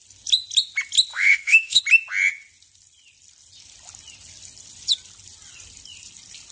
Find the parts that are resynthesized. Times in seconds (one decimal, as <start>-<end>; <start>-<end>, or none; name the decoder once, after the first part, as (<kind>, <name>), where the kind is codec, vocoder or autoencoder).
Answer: 1.1-1.8 (autoencoder, DAC-VAE)